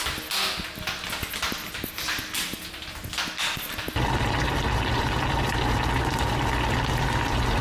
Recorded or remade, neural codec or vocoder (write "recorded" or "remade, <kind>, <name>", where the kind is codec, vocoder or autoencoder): recorded